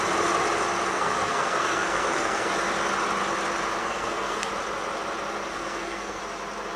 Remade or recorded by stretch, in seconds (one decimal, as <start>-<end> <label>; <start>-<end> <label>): 0.0-0.9 recorded; 0.9-2.5 remade; 2.5-3.8 recorded; 3.8-4.5 remade; 4.5-5.5 recorded; 5.5-6.2 remade; 6.2-6.8 recorded